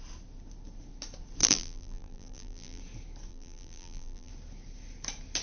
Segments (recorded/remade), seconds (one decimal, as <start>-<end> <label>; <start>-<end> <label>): 0.0-1.4 recorded; 1.4-2.8 remade; 2.8-3.3 recorded; 3.3-4.3 remade; 4.3-5.4 recorded